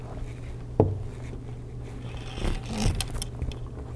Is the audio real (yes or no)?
yes